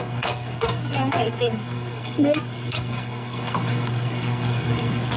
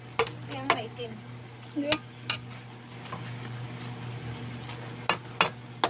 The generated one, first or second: first